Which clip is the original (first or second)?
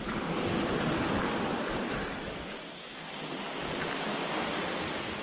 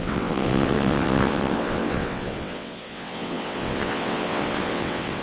first